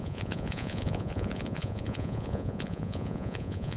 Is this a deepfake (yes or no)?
yes